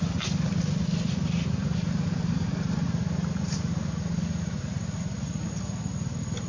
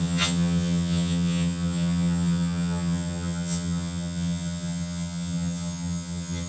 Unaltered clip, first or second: first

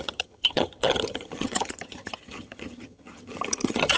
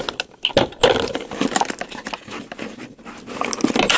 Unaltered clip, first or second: second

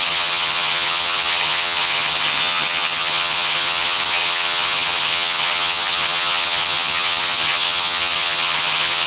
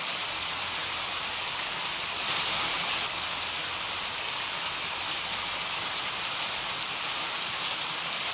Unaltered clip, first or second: second